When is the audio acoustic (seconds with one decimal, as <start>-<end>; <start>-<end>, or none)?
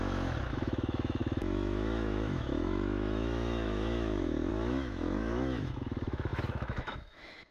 none